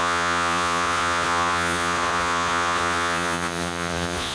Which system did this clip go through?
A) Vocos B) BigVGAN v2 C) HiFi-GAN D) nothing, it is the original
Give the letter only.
A